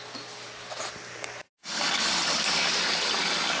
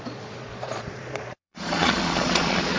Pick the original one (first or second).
first